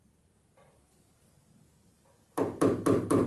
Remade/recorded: recorded